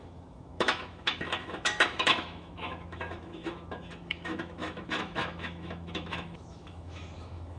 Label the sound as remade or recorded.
remade